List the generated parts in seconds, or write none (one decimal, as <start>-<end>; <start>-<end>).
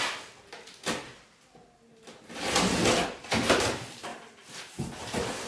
none